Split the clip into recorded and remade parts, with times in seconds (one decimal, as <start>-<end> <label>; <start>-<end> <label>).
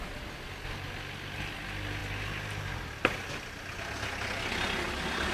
0.0-5.3 recorded